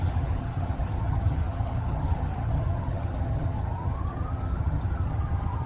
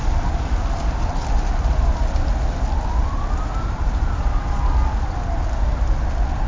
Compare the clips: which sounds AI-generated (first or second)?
first